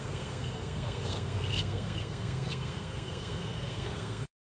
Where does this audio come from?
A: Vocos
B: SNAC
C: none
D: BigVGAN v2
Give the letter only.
B